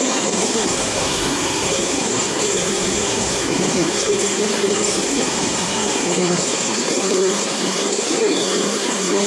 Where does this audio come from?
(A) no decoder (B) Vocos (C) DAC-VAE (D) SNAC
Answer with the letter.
D